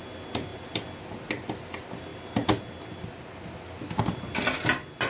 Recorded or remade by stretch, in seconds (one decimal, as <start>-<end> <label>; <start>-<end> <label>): 0.0-5.1 recorded